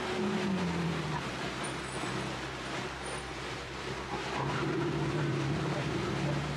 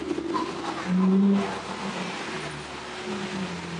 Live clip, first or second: second